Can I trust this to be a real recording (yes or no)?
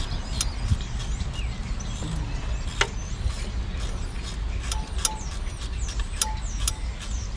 yes